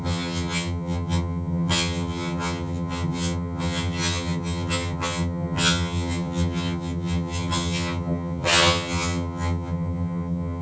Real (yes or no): no